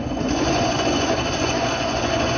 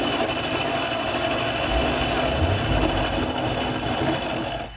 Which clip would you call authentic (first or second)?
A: second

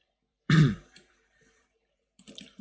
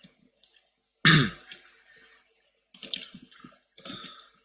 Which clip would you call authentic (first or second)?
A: second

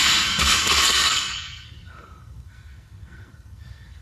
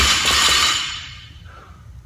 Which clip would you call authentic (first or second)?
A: second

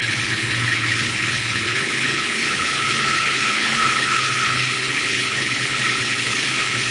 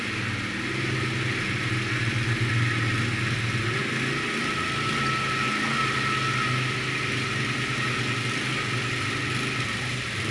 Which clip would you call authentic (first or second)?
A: second